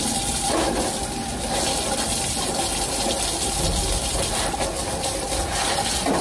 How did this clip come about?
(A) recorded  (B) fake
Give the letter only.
A